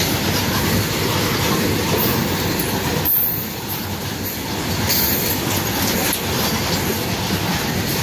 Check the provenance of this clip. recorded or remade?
recorded